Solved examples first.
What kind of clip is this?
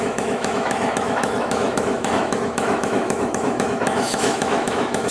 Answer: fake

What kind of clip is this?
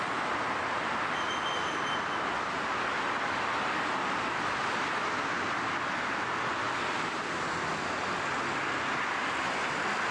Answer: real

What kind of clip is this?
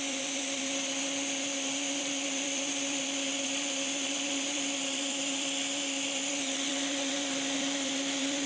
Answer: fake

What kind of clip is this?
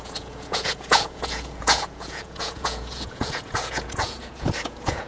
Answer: fake